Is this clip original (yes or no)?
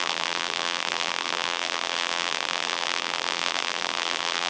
no